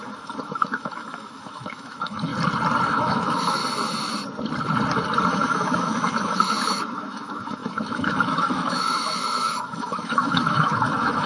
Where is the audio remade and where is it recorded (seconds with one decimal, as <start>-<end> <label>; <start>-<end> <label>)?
0.0-2.3 remade; 2.3-2.9 recorded; 2.9-3.6 remade; 3.6-5.3 recorded; 5.3-11.3 remade